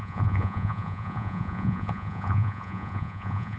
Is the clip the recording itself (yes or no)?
no